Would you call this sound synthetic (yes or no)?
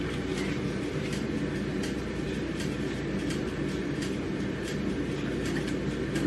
no